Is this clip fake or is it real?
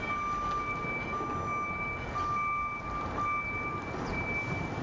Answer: real